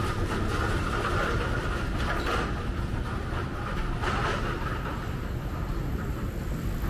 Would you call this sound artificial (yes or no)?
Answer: no